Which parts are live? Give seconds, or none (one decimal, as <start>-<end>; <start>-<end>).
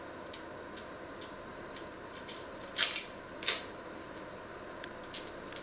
0.0-1.5; 4.9-5.6